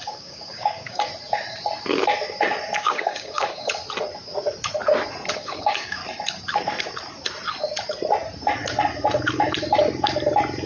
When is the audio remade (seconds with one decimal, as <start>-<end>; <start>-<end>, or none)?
0.0-1.1; 2.8-3.8; 5.3-6.0